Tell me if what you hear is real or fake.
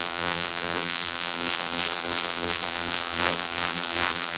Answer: fake